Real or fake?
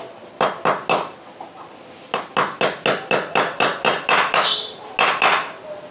real